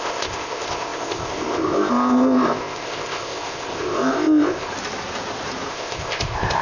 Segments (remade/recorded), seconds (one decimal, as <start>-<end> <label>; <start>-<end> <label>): 0.0-4.7 remade; 4.7-5.7 recorded; 5.7-6.6 remade